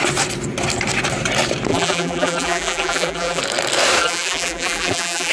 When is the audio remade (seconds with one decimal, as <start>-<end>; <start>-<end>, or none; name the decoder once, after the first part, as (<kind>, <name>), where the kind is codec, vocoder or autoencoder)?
1.7-3.4 (vocoder, BigVGAN v2); 4.0-5.3